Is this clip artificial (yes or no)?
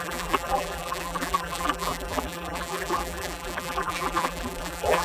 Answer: yes